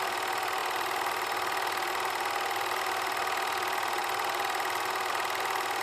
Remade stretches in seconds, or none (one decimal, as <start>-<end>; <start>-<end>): none